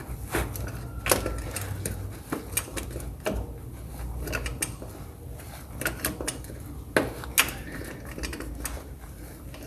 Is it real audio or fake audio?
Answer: real